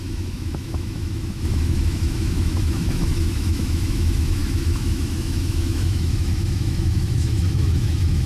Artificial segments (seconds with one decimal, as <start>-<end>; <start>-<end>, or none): 0.0-8.3